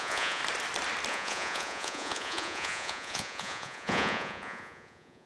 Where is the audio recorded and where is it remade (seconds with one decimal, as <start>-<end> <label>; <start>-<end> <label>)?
0.0-0.4 remade; 0.4-1.1 recorded; 1.1-5.3 remade